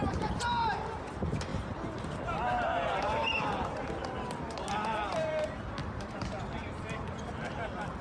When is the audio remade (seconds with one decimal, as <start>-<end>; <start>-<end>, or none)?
none